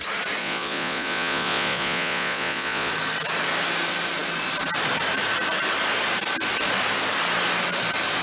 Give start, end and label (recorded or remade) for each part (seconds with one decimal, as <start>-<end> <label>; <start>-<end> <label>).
0.0-0.4 recorded; 0.4-2.9 remade; 2.9-8.2 recorded

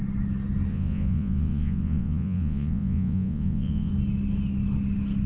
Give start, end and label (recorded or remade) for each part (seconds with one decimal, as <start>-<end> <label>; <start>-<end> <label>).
0.0-0.7 recorded; 0.7-3.9 remade; 3.9-5.3 recorded